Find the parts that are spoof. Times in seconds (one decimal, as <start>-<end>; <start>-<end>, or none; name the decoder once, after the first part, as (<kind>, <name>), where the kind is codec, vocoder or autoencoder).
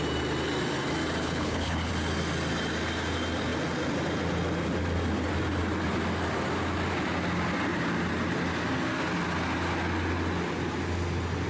1.2-1.9 (codec, HILCodec)